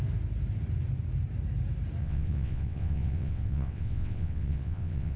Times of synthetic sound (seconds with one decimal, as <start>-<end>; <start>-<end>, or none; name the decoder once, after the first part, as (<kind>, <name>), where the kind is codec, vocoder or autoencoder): 2.0-5.2 (vocoder, WaveNeXt)